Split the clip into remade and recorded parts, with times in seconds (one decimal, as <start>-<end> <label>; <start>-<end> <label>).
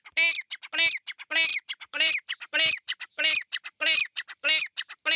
0.0-1.5 recorded; 1.5-4.6 remade; 4.6-5.2 recorded